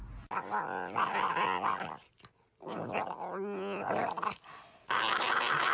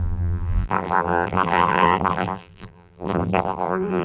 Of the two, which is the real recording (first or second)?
first